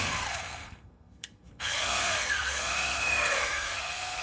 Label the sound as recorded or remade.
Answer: remade